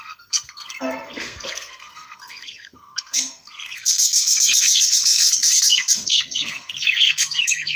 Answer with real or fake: fake